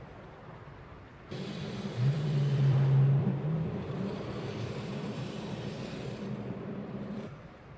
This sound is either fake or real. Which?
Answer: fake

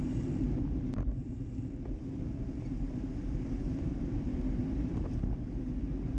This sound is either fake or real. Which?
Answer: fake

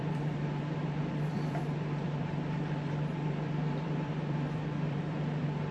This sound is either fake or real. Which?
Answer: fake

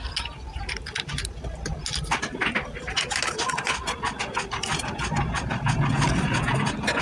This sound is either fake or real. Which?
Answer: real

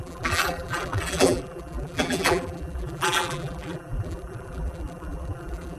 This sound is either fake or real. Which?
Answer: fake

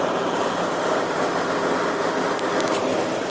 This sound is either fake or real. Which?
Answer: fake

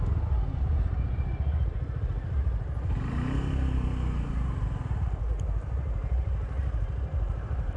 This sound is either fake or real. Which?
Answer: fake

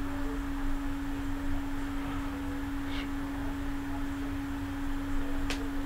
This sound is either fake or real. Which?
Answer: real